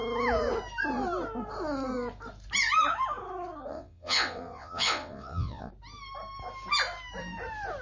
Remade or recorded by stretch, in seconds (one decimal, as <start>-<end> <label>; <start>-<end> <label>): 0.0-3.7 recorded; 3.7-5.7 remade; 5.7-7.8 recorded